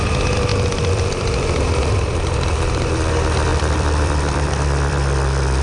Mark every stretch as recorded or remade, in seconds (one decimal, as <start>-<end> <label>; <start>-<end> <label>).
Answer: 0.0-0.5 recorded; 0.5-3.1 remade; 3.1-3.5 recorded; 3.5-5.6 remade